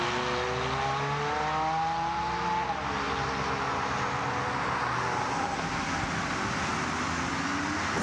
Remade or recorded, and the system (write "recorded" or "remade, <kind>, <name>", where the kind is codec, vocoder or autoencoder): recorded